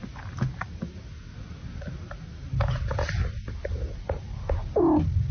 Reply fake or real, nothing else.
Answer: real